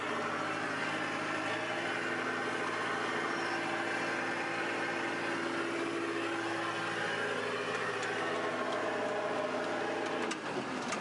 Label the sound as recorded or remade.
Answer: recorded